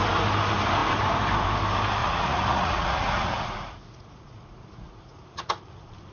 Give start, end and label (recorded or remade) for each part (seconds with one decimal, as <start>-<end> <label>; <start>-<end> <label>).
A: 0.0-2.0 recorded; 2.0-5.5 remade; 5.5-6.1 recorded